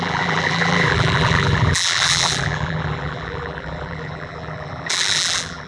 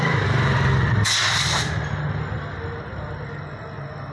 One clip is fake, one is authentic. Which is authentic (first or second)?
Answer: second